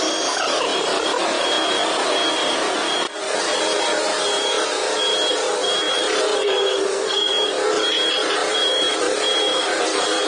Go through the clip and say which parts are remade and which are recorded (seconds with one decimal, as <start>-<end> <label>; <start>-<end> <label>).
0.0-6.4 recorded; 6.4-7.3 remade; 7.3-10.3 recorded